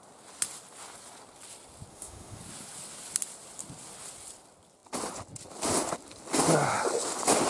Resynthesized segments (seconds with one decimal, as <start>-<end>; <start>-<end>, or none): 1.9-2.4